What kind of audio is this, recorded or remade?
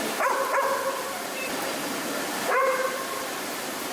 remade